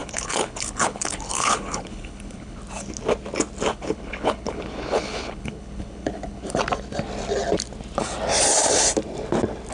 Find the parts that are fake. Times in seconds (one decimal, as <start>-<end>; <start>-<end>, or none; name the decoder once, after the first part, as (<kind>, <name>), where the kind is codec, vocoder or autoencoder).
0.0-2.6 (codec, HILCodec); 3.7-6.6